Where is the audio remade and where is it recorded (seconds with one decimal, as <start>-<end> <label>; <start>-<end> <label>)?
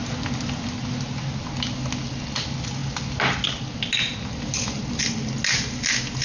0.0-6.2 recorded